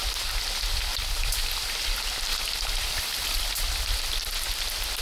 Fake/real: real